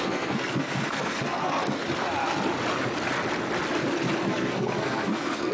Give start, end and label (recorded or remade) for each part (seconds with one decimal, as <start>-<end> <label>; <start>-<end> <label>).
0.0-1.6 remade; 1.6-4.3 recorded; 4.3-5.5 remade